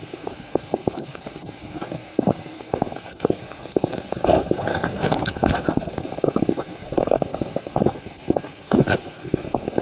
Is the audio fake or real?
fake